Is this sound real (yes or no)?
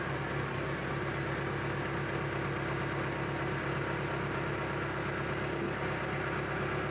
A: yes